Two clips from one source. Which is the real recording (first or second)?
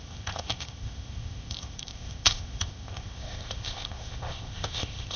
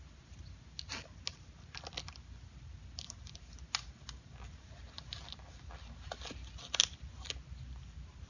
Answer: second